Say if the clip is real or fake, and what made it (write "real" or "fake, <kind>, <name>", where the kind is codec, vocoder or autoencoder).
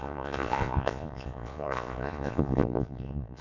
fake, vocoder, Vocos